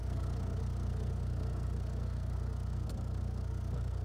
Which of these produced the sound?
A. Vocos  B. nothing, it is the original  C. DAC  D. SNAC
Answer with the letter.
D